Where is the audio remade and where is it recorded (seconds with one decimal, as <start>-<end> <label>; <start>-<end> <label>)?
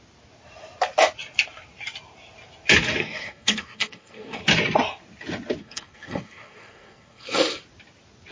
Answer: 0.0-3.0 recorded; 3.0-4.4 remade; 4.4-5.6 recorded; 5.6-7.6 remade; 7.6-8.3 recorded